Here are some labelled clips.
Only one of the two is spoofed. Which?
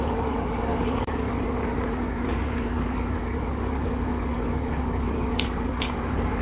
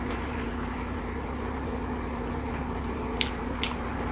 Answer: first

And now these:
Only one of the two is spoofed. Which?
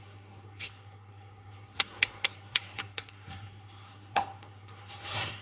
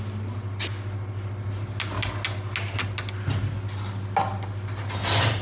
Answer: first